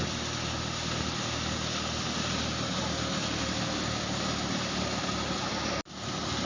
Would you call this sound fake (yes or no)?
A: no